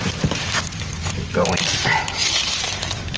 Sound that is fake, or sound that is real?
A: real